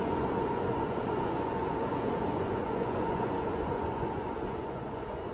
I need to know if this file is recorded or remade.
remade